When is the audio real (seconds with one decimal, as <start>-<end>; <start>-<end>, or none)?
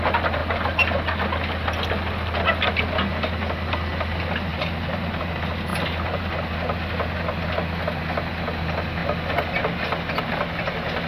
0.0-4.5; 5.2-5.7; 6.3-11.1